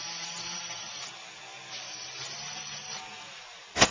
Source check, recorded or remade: recorded